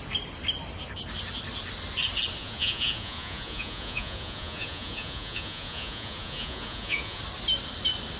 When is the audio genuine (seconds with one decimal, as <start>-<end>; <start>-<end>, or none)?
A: 0.0-2.4; 7.2-8.2